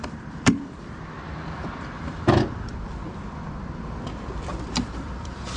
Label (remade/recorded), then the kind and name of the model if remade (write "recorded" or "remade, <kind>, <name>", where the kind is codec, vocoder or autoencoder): remade, vocoder, BigVGAN v2